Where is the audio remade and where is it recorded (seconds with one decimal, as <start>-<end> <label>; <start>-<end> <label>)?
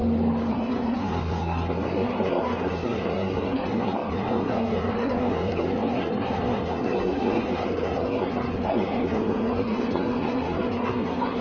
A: 0.0-0.5 recorded; 0.5-11.4 remade